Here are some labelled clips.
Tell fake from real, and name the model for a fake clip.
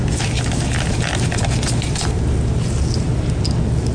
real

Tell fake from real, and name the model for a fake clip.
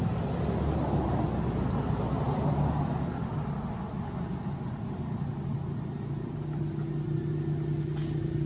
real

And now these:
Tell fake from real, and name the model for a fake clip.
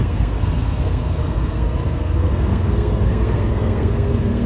fake, codec, SNAC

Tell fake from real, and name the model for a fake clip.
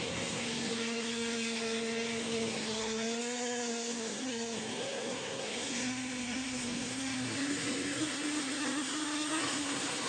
fake, codec, SNAC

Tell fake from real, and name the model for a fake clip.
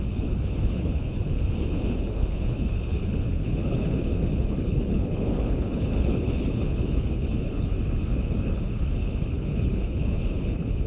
fake, codec, HILCodec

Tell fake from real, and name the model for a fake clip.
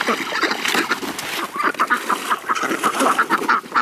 real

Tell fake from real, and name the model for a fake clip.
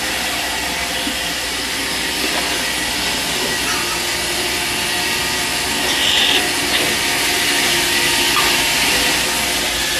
real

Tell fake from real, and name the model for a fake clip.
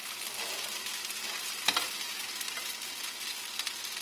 real